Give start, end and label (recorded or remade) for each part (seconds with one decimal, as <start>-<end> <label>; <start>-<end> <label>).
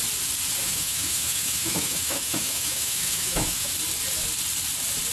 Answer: 0.0-0.6 recorded; 0.6-3.7 remade; 3.7-5.1 recorded